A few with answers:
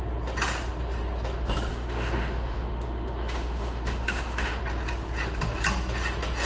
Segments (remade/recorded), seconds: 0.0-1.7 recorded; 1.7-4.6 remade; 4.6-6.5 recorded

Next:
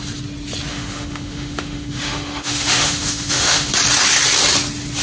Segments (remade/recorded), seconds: 0.0-0.7 recorded; 0.7-3.7 remade; 3.7-5.0 recorded

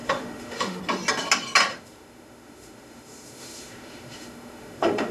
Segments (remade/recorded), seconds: 0.0-0.8 remade; 0.8-1.7 recorded; 1.7-5.1 remade

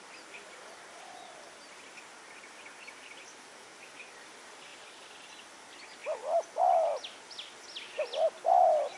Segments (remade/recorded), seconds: 0.0-3.3 recorded; 3.3-3.9 remade; 3.9-9.0 recorded

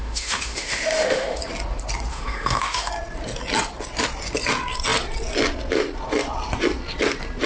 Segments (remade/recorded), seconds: 0.0-1.4 remade; 1.4-2.1 recorded; 2.1-2.9 remade; 2.9-7.5 recorded

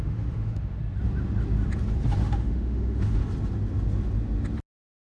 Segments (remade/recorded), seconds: 0.0-0.8 remade; 0.8-2.2 recorded; 2.2-3.2 remade; 3.2-5.2 recorded